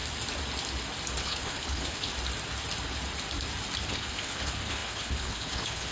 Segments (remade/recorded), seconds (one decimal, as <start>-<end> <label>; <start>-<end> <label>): 0.0-1.2 recorded; 1.2-2.1 remade; 2.1-3.9 recorded; 3.9-5.9 remade